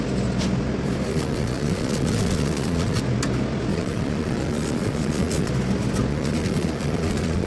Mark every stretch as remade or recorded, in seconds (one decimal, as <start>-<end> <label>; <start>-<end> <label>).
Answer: 0.0-1.1 recorded; 1.1-3.0 remade; 3.0-3.7 recorded; 3.7-5.5 remade; 5.5-6.1 recorded; 6.1-7.5 remade